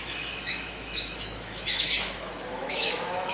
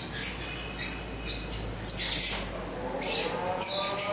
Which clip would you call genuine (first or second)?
second